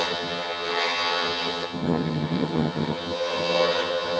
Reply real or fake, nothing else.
fake